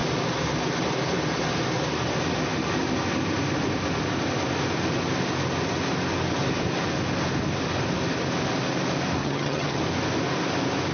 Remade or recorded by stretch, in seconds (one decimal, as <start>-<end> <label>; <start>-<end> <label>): 0.0-9.2 recorded; 9.2-9.8 remade; 9.8-10.9 recorded